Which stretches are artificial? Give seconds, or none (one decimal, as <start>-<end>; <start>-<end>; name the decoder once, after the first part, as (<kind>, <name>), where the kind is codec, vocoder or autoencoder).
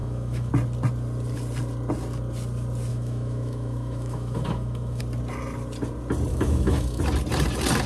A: 0.0-0.5 (autoencoder, DAC-VAE); 2.9-5.0; 6.3-7.0